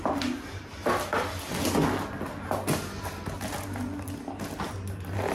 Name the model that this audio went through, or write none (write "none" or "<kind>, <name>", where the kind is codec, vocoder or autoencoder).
none